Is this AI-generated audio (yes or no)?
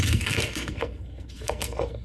yes